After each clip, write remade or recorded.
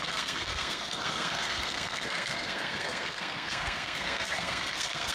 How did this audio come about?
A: remade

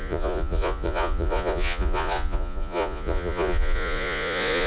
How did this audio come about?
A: remade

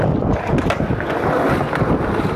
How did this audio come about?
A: recorded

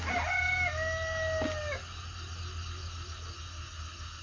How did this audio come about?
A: recorded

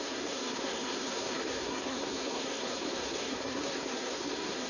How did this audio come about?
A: remade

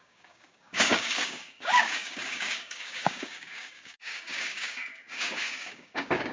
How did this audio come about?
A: remade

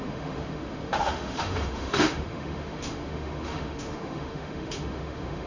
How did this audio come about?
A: remade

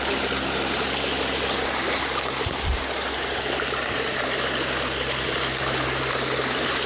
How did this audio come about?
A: recorded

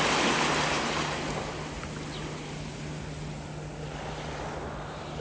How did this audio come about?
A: recorded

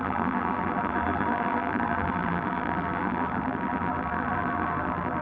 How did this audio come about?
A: remade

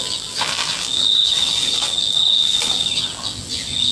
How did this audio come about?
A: remade